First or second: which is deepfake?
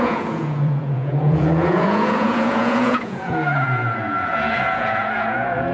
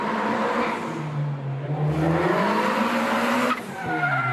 first